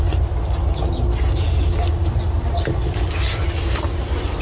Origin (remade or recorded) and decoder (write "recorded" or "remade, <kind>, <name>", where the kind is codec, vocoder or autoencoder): recorded